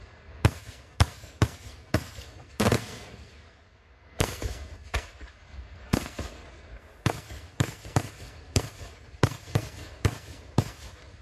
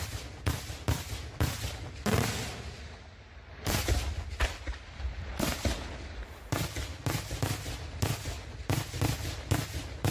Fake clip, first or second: first